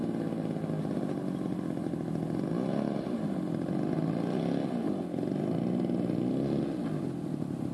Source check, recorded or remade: recorded